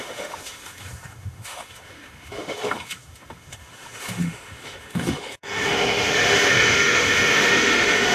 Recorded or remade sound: remade